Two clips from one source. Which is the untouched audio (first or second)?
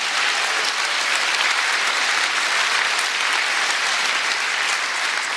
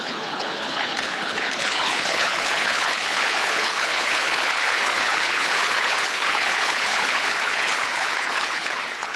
first